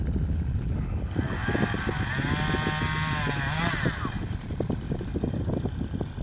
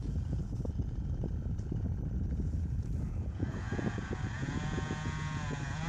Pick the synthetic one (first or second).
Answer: second